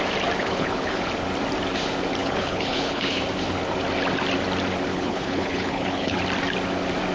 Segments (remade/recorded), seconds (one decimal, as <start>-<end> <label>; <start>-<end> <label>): 0.0-0.4 recorded; 0.4-1.0 remade; 1.0-2.2 recorded; 2.2-3.2 remade; 3.2-4.9 recorded; 4.9-6.2 remade; 6.2-7.1 recorded